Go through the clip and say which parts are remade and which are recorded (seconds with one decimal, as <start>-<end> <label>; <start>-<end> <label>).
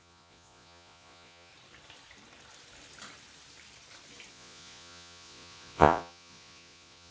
0.0-1.5 remade; 1.5-4.3 recorded; 4.3-7.1 remade